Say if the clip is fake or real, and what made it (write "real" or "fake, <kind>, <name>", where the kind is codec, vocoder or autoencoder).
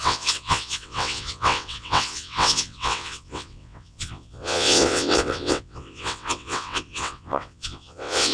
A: fake, vocoder, WaveNeXt